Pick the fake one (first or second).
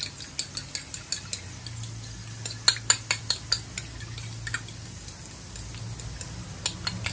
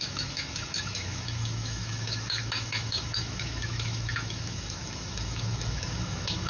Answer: second